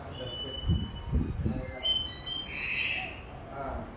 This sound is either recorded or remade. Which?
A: recorded